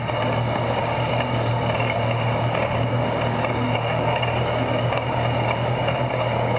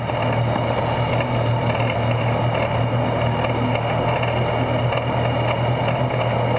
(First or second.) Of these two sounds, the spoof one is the first